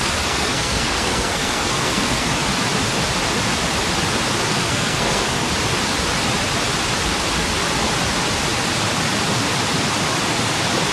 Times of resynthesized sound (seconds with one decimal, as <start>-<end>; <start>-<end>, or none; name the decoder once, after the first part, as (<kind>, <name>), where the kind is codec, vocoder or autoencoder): 0.0-2.3 (codec, SNAC); 4.5-5.5